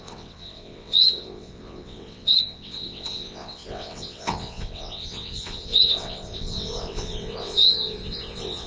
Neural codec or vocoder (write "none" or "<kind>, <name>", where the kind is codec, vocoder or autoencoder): vocoder, WaveNeXt